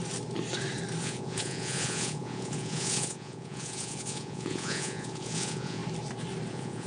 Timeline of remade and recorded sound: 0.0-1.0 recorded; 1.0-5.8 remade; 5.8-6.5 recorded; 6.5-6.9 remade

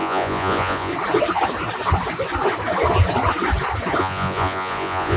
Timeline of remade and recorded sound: 0.0-0.9 remade; 0.9-4.0 recorded; 4.0-5.2 remade

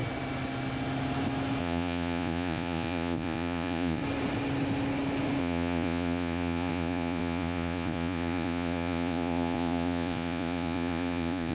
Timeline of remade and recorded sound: 0.0-1.6 recorded; 1.6-4.0 remade; 4.0-5.4 recorded; 5.4-11.5 remade

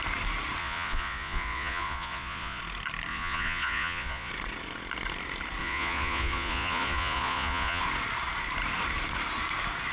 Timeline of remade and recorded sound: 0.0-0.6 recorded; 0.6-2.6 remade; 2.6-3.1 recorded; 3.1-4.3 remade; 4.3-5.6 recorded; 5.6-7.8 remade; 7.8-9.9 recorded